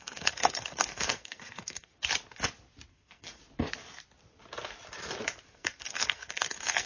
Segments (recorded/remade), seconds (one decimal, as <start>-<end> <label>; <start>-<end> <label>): 0.0-1.9 remade; 1.9-2.9 recorded; 2.9-3.4 remade; 3.4-5.4 recorded; 5.4-6.9 remade